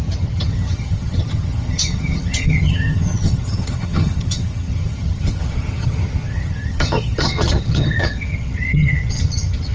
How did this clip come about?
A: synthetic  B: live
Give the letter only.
A